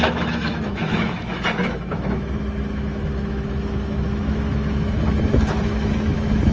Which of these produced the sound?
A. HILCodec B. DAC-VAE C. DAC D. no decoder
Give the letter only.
B